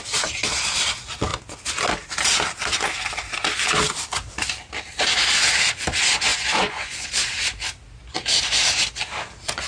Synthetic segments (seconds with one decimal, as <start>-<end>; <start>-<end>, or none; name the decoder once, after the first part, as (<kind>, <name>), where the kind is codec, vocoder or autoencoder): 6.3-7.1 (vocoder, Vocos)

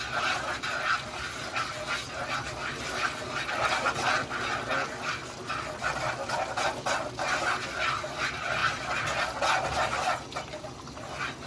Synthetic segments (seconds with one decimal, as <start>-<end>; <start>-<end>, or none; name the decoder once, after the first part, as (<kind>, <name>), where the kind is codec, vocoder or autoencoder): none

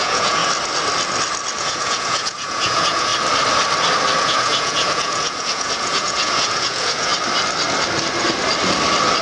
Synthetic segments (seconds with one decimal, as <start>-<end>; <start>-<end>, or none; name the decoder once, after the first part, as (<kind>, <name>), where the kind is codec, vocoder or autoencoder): 0.0-0.4 (vocoder, Vocos); 1.6-3.1; 4.2-7.1

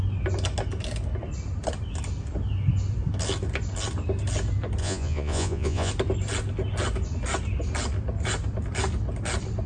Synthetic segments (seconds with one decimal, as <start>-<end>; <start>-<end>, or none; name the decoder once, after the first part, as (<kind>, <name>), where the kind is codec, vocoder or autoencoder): 4.8-5.9 (vocoder, Vocos)

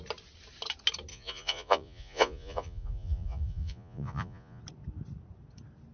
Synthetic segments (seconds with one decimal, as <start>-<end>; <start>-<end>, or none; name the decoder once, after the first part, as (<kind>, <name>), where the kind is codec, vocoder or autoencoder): 1.1-4.6 (vocoder, Vocos)